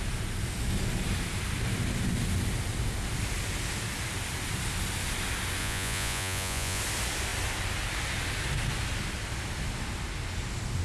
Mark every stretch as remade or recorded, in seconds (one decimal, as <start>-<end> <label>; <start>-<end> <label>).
0.0-5.6 recorded; 5.6-6.8 remade; 6.8-10.8 recorded